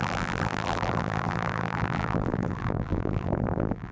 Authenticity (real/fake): fake